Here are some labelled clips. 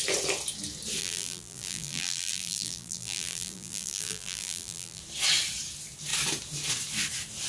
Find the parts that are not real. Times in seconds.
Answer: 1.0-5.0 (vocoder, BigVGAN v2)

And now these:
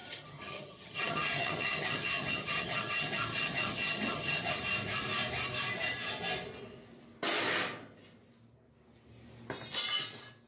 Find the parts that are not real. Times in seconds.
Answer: 0.0-4.5 (vocoder, HiFi-GAN)

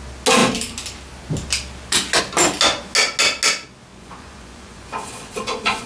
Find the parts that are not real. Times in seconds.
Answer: 3.9-5.9 (vocoder, Vocos)

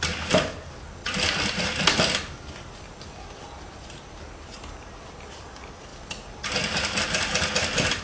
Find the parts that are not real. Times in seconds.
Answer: none